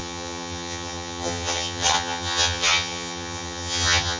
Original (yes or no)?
no